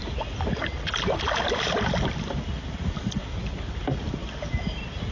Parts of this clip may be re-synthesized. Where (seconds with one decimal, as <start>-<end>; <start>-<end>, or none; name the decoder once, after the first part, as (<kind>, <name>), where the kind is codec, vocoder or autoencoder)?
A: none